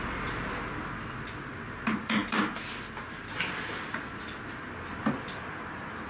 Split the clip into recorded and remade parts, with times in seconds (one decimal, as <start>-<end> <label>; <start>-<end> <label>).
0.0-6.1 recorded